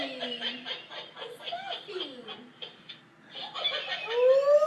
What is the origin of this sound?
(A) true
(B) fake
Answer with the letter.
A